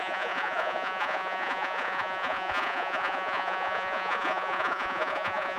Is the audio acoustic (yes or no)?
no